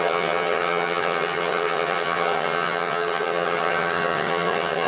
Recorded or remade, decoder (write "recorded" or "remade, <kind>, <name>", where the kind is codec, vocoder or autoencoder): remade, vocoder, HiFi-GAN